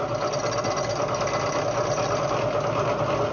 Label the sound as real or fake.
real